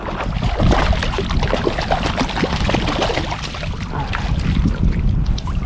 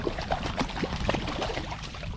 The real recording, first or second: first